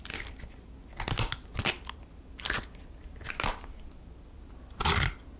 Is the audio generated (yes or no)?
no